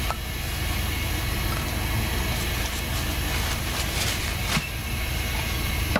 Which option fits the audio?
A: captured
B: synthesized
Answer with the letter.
A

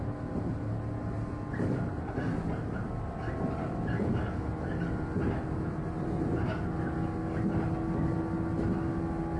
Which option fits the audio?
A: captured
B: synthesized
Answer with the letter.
A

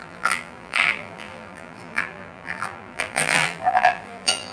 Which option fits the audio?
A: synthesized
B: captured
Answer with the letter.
A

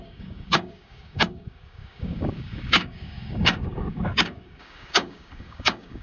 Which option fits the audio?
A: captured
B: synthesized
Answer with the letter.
B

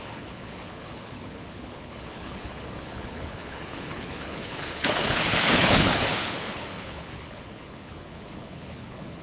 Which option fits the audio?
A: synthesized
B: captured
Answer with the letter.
A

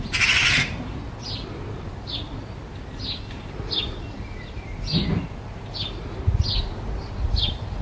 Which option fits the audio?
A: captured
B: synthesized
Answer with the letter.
A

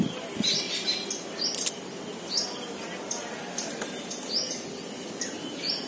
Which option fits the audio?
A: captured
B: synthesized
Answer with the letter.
A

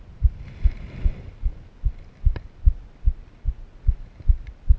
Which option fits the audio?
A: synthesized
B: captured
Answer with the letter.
B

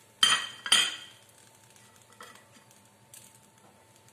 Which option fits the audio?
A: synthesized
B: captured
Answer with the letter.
B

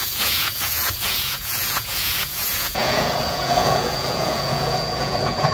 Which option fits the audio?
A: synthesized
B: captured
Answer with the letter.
A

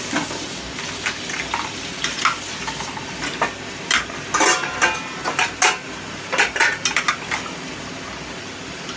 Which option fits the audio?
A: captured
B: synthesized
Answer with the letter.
A